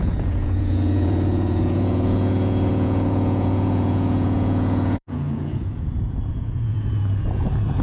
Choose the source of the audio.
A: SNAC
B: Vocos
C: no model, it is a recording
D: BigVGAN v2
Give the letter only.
B